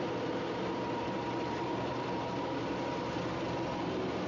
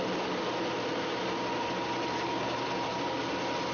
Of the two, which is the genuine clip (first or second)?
second